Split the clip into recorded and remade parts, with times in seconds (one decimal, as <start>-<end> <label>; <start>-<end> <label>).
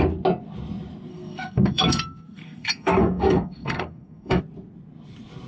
0.0-1.1 recorded; 1.1-4.4 remade; 4.4-5.5 recorded